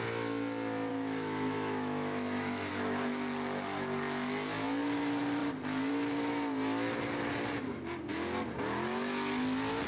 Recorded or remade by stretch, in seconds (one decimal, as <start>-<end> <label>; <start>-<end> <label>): 0.0-0.9 recorded; 0.9-2.7 remade; 2.7-9.9 recorded